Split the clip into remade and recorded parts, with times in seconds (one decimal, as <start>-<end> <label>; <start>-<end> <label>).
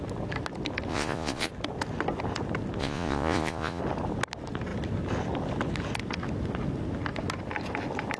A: 0.0-0.9 recorded; 0.9-1.5 remade; 1.5-2.8 recorded; 2.8-3.8 remade; 3.8-8.2 recorded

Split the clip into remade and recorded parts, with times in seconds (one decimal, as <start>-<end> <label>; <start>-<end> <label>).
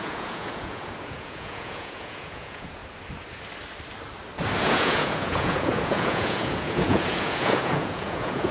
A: 0.0-2.8 remade; 2.8-4.6 recorded; 4.6-8.5 remade